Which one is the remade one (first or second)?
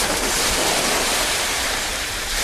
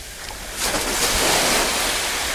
first